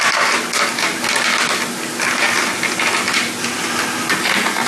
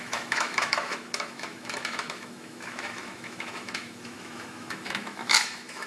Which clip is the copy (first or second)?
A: second